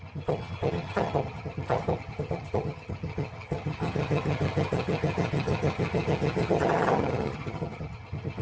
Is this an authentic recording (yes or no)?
no